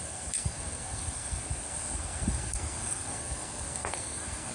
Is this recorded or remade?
remade